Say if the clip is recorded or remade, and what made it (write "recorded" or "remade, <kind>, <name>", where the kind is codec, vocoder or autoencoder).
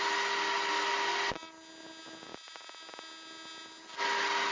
recorded